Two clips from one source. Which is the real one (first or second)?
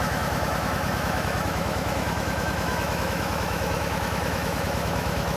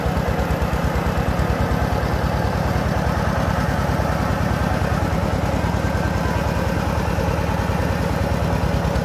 second